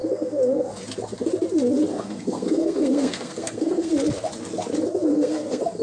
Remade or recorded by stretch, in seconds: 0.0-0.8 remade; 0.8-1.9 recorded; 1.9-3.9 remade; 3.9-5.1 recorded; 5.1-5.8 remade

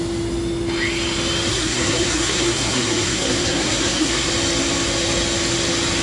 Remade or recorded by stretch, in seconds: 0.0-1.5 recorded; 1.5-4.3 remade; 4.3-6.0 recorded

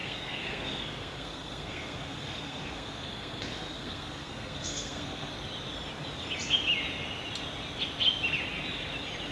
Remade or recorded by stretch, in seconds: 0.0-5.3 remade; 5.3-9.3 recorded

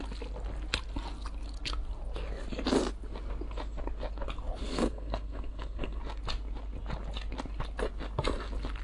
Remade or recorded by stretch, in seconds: 0.0-4.6 recorded; 4.6-6.0 remade; 6.0-8.8 recorded

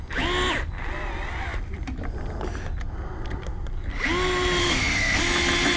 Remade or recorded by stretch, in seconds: 0.0-4.6 recorded; 4.6-5.2 remade; 5.2-5.8 recorded